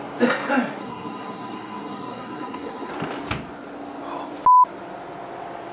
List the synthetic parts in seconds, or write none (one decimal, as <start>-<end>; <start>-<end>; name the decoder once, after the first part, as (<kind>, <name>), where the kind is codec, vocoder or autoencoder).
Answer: 0.8-2.9 (codec, SNAC)